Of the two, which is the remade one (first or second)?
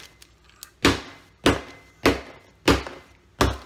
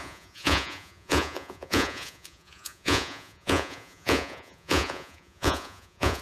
second